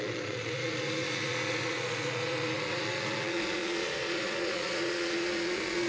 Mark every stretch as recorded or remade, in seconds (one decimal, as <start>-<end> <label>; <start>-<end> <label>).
0.0-5.9 remade